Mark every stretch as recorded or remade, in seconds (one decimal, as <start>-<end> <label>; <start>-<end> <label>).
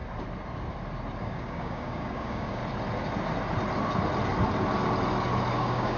0.0-1.2 recorded; 1.2-2.6 remade; 2.6-5.5 recorded; 5.5-6.0 remade